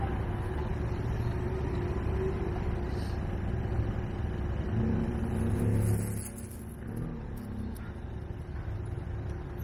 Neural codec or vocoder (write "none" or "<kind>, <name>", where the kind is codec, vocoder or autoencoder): none